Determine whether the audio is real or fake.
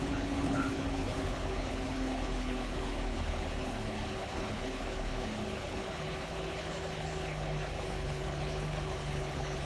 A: fake